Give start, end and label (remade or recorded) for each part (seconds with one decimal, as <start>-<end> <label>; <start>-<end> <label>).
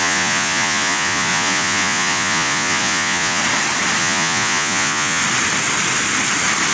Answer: 0.0-3.4 remade; 3.4-4.0 recorded; 4.0-5.2 remade; 5.2-6.7 recorded